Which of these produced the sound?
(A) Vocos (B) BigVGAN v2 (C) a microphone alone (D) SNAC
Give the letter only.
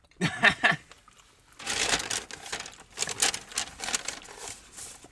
C